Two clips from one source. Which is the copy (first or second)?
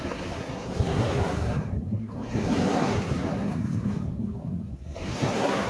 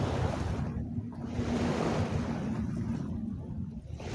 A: first